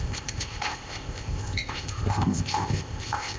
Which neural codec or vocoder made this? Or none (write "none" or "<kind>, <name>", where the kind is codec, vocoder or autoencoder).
codec, ZipCodec